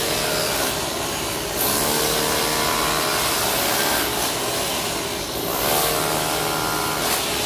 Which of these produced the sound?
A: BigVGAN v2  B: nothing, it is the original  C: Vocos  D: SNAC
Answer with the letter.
B